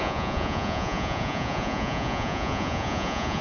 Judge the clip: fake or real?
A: fake